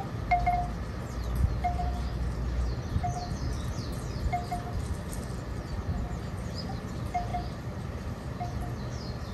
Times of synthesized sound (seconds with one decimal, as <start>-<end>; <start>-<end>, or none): none